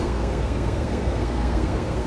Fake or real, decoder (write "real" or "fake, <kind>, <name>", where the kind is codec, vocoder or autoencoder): fake, codec, SNAC